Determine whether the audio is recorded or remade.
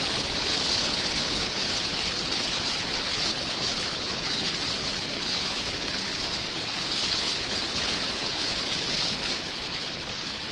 remade